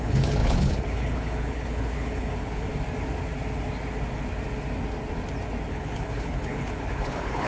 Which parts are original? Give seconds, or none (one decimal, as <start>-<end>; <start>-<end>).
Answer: 2.7-5.7